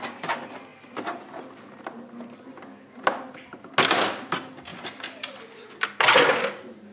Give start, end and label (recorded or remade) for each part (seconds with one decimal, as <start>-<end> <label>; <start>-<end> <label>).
0.0-4.7 recorded; 4.7-5.8 remade; 5.8-6.9 recorded